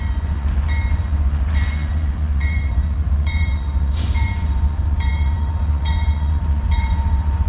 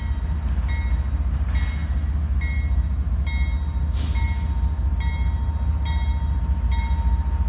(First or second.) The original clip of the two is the second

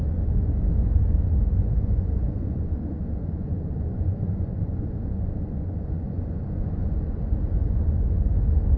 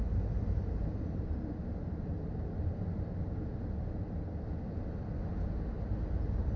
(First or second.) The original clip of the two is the second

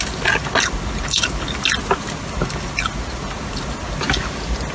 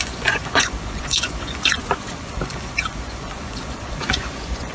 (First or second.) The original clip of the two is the first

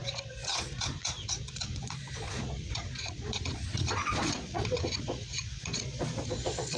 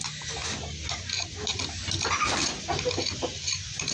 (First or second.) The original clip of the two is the second